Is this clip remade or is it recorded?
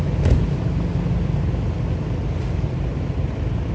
recorded